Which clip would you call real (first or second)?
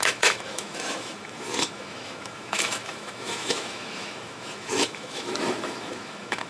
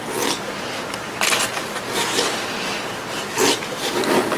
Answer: second